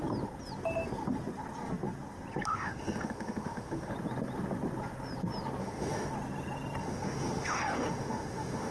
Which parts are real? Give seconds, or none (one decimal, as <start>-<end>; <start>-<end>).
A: 0.0-2.5; 3.9-5.6; 6.1-6.8